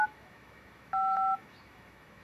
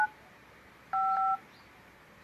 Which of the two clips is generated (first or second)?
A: first